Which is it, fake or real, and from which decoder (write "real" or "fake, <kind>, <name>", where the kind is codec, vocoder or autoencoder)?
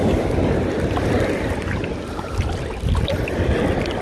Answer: real